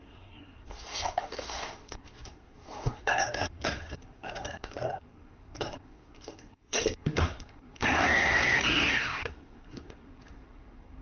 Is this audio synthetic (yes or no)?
yes